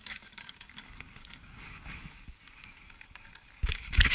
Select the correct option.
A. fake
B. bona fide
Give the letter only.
A